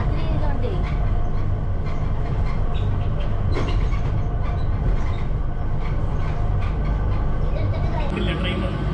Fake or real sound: real